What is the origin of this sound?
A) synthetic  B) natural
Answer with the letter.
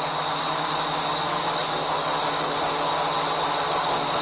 B